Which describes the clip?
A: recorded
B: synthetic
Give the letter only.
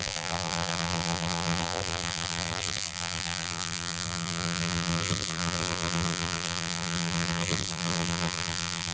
B